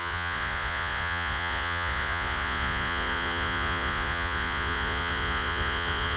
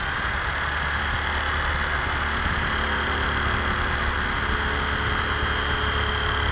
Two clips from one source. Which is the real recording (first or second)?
second